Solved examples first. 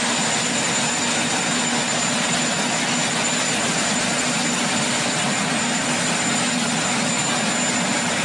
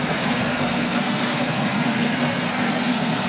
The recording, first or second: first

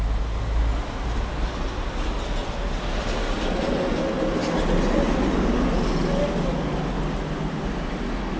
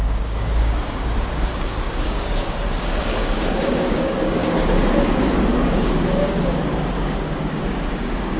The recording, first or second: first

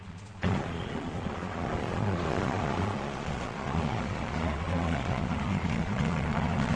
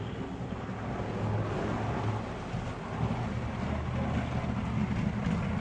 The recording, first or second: second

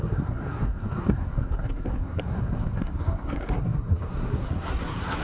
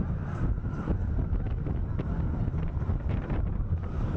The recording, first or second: second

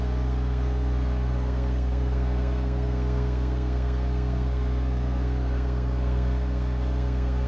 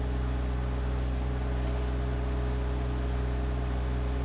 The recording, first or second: second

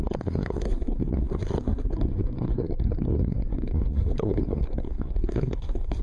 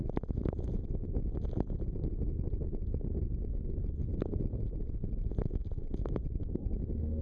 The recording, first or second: second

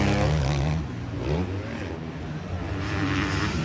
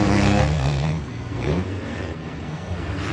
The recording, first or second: first